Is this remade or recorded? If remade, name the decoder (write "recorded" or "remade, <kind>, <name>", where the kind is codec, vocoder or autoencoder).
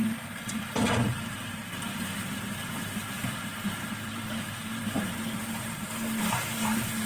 remade, vocoder, BigVGAN v2